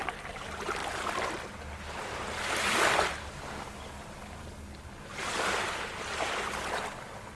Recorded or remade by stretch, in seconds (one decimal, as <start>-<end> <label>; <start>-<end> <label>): 0.0-5.1 recorded; 5.1-6.3 remade; 6.3-7.3 recorded